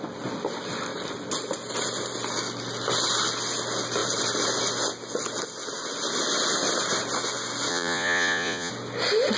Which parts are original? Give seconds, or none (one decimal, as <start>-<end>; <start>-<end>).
0.0-7.7; 8.7-9.4